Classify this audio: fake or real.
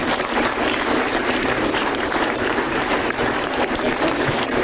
fake